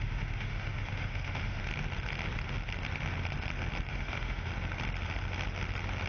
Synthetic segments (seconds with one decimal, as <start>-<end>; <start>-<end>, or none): 0.0-1.6; 3.9-4.5